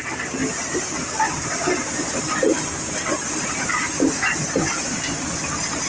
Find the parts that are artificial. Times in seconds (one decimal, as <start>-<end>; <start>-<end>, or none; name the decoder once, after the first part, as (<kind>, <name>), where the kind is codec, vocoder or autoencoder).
none